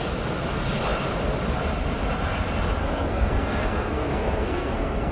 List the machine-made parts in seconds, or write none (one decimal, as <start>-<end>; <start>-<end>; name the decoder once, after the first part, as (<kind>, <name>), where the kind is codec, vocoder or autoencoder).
2.8-5.1 (codec, SNAC)